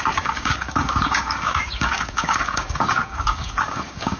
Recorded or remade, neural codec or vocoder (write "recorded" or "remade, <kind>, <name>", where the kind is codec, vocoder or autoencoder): remade, codec, DAC